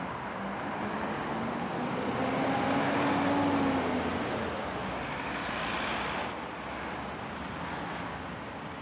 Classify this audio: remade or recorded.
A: recorded